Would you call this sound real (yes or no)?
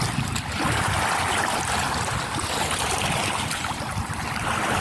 no